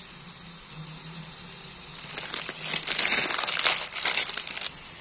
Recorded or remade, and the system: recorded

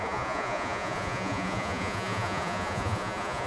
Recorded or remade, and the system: remade, vocoder, Vocos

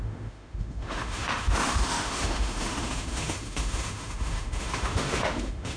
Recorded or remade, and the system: remade, autoencoder, DAC-VAE